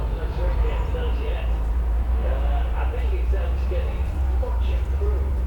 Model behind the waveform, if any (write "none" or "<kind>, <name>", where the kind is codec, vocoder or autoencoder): vocoder, BigVGAN v2